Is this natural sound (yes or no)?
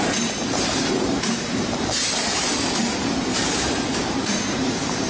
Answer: no